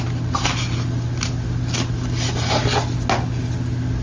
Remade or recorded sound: recorded